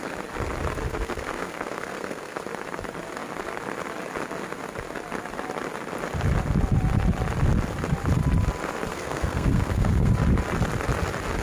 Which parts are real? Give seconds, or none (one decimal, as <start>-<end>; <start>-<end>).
0.0-0.9; 2.4-8.9; 10.1-11.4